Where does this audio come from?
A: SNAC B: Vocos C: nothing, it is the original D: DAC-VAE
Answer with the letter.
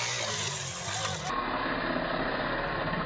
C